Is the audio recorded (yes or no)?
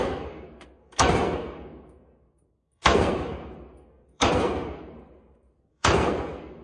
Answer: no